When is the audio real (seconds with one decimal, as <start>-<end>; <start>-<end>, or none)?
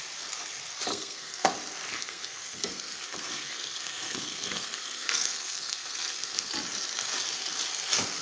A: 0.0-0.9; 1.5-1.9; 6.5-8.2